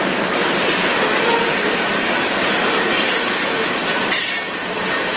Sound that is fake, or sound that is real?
fake